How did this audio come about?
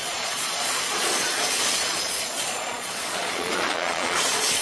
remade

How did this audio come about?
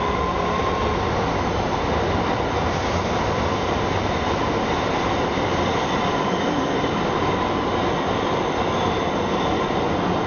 recorded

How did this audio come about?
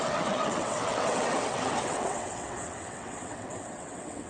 remade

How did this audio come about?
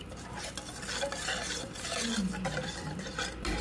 recorded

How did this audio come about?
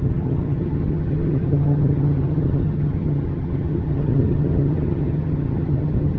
remade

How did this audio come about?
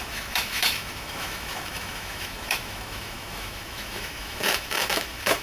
remade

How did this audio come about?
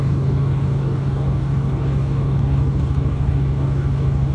remade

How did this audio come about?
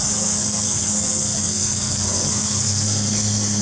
remade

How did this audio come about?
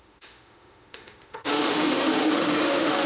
remade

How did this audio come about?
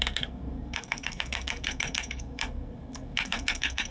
remade